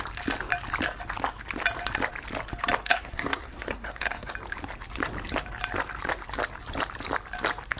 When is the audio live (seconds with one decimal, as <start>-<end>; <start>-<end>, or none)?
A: 0.0-2.9; 4.3-7.8